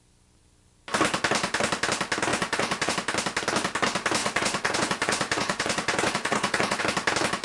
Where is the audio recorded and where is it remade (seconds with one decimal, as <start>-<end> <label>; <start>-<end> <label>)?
0.0-2.3 recorded; 2.3-2.9 remade; 2.9-4.2 recorded; 4.2-6.8 remade; 6.8-7.4 recorded